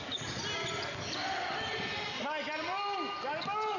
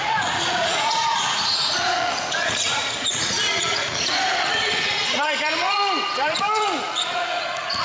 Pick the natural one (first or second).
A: first